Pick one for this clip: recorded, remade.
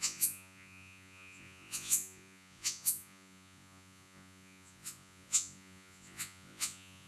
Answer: remade